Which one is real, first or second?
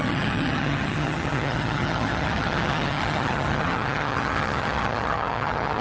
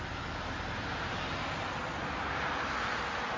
second